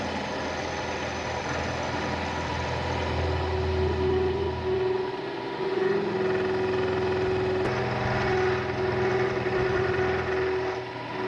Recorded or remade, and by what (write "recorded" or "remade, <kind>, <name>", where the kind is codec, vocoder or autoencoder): recorded